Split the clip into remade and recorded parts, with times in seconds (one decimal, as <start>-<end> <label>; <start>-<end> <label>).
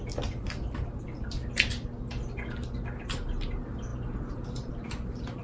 0.0-5.4 recorded